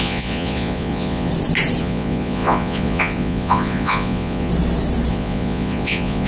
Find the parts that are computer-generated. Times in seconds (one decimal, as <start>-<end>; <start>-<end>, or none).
0.0-1.3; 1.8-4.5; 5.1-6.3